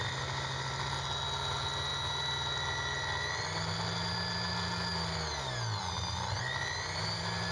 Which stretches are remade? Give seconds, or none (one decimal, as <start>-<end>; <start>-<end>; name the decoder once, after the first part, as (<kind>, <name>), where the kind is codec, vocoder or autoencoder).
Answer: none